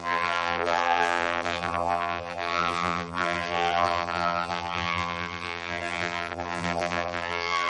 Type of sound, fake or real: fake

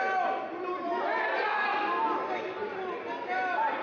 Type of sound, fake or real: real